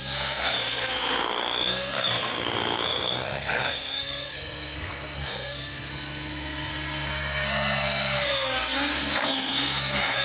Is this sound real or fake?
fake